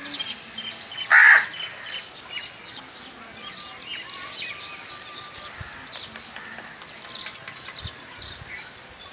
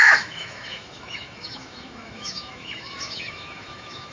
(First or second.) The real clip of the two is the first